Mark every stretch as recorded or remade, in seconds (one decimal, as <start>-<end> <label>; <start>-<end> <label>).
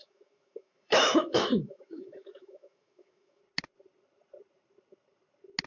0.0-3.4 remade; 3.4-5.7 recorded